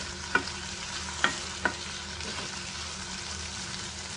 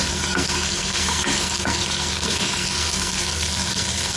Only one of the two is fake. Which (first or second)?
second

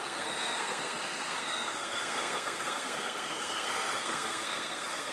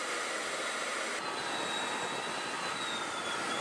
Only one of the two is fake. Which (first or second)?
first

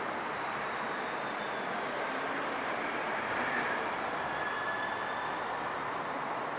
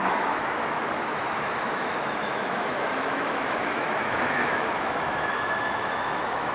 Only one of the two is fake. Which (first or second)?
second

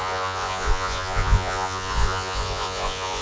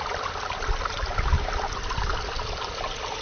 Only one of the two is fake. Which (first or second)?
first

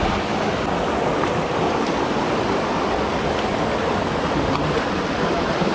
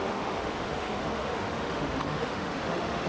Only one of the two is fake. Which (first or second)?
second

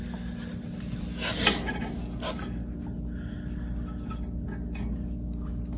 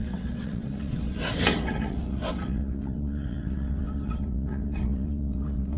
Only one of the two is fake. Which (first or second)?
second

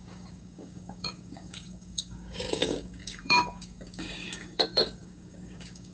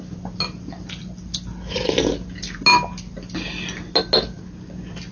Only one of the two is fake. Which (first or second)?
first